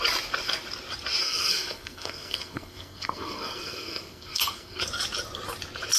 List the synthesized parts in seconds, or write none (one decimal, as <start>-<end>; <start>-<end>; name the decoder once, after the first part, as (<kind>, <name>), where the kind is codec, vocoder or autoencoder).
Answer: 1.2-4.8 (codec, SNAC)